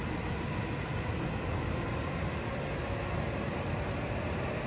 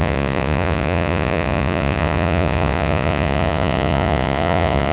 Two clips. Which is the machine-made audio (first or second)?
second